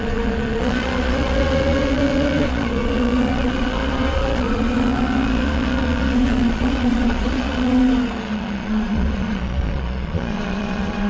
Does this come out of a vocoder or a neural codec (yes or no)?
yes